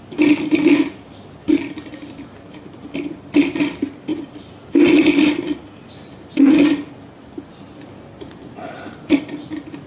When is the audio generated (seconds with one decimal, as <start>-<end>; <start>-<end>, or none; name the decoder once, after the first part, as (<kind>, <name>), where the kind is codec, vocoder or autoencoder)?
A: none